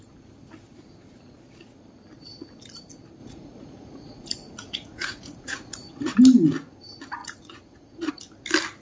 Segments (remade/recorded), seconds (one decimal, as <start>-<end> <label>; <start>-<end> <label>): 0.0-3.2 recorded; 3.2-6.2 remade; 6.2-7.2 recorded; 7.2-8.1 remade; 8.1-8.8 recorded